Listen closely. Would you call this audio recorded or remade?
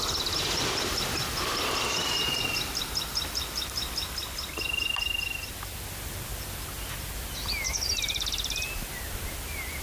recorded